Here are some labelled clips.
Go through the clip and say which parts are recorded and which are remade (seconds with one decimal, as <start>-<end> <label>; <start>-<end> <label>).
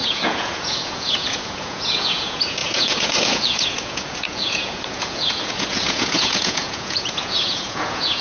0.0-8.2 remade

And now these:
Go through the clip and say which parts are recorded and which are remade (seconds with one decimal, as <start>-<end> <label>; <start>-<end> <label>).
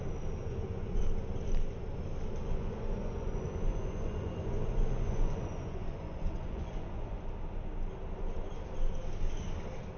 0.0-0.4 recorded; 0.4-1.0 remade; 1.0-2.4 recorded; 2.4-7.2 remade; 7.2-10.0 recorded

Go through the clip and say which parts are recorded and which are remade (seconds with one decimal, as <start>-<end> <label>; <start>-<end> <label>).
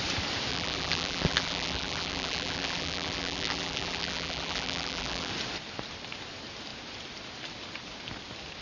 0.0-0.5 recorded; 0.5-5.3 remade; 5.3-8.6 recorded